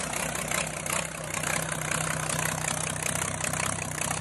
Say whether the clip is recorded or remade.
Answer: recorded